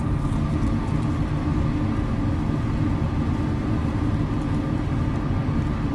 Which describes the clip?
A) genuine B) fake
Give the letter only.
A